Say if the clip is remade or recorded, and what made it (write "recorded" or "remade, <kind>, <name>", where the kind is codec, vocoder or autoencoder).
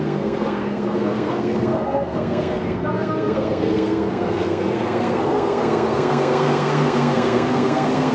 remade, codec, SNAC